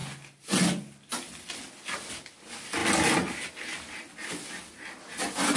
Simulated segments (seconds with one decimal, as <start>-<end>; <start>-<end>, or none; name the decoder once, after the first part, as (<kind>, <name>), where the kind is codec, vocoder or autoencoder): none